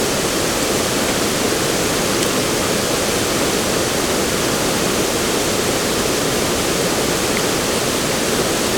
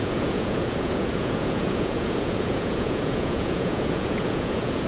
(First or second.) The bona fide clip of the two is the first